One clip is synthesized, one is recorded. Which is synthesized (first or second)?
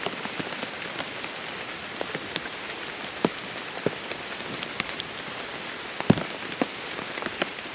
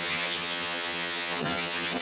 second